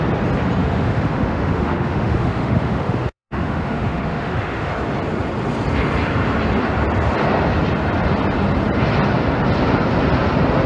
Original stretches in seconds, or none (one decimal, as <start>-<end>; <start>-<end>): 0.0-0.6; 4.7-10.7

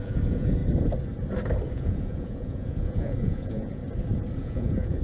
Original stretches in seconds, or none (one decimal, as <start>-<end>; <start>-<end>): 0.6-1.7; 3.8-4.4

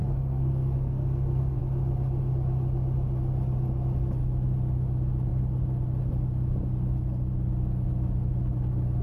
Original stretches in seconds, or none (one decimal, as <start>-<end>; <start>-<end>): 1.6-9.0